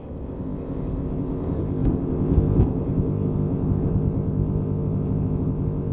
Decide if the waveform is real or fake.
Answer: fake